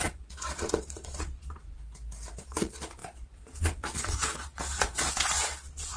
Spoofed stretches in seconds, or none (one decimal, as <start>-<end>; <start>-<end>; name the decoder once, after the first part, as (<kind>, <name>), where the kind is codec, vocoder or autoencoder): 0.0-1.8 (vocoder, Vocos); 2.4-6.0

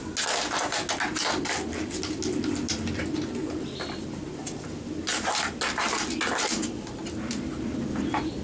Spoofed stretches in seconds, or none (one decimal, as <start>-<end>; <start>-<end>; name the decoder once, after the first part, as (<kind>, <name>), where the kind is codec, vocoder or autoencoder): none

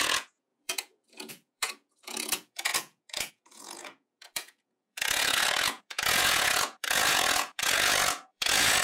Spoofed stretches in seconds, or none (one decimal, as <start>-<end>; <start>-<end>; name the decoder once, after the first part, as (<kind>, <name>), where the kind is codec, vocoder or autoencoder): 0.0-8.8 (vocoder, Vocos)

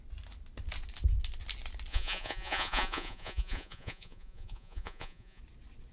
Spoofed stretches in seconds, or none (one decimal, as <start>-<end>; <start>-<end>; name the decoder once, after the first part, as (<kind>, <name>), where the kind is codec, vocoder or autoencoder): 1.9-5.4 (vocoder, Vocos)

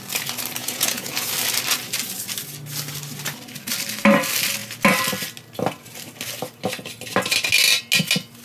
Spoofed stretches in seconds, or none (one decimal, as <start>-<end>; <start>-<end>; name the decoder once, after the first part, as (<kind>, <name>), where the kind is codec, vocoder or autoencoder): 0.6-1.3 (vocoder, Vocos)

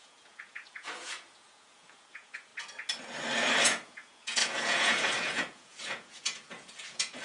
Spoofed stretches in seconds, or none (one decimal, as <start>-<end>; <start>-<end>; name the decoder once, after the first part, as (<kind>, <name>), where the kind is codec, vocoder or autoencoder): 0.0-2.5 (vocoder, Vocos); 3.6-7.2